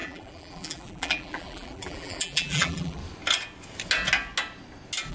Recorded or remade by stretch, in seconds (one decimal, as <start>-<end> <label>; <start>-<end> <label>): 0.0-3.0 remade; 3.0-5.1 recorded